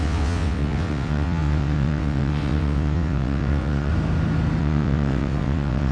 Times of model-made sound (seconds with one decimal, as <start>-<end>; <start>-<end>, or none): 0.0-3.9; 4.6-5.9